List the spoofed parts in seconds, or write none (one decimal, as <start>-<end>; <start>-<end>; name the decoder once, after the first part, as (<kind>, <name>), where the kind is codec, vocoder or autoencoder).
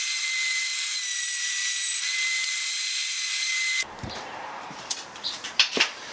0.0-0.7 (vocoder, BigVGAN v2); 1.2-6.1